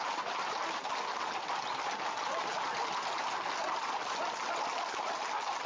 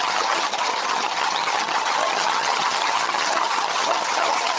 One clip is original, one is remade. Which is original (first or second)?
first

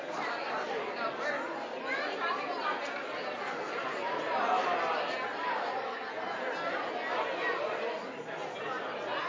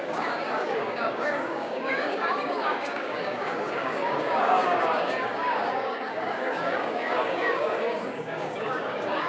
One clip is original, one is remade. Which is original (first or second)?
first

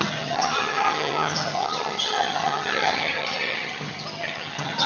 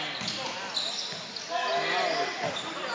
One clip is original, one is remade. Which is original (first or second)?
second